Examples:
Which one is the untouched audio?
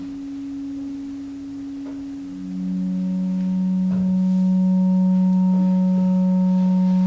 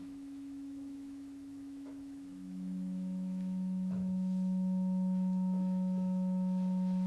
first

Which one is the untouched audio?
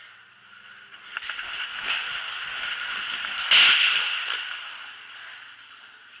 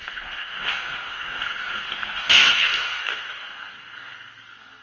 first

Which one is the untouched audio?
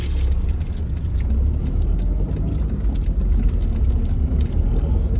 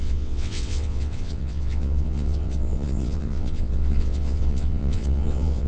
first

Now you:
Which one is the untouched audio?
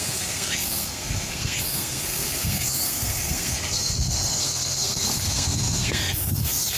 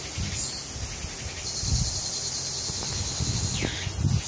second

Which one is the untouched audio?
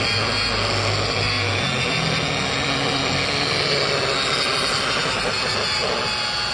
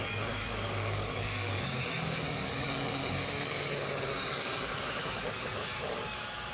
first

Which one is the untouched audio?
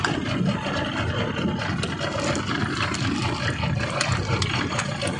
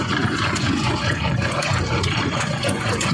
first